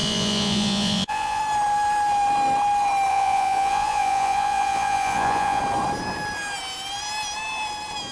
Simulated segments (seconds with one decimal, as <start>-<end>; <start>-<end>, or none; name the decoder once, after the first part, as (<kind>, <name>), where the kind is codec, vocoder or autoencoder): 0.0-1.4 (vocoder, Vocos); 3.1-5.6